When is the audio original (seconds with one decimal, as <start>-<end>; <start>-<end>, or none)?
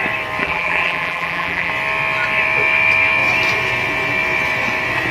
0.0-0.4; 1.7-5.1